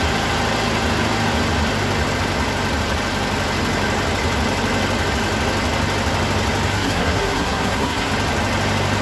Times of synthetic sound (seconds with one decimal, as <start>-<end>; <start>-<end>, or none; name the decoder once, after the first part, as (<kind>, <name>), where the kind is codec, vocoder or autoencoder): 6.7-8.1 (codec, SNAC)